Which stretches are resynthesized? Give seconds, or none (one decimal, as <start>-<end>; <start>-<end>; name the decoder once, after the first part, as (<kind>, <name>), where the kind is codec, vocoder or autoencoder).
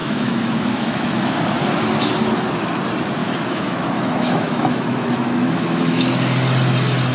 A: 0.0-1.3 (autoencoder, DAC-VAE); 3.2-6.0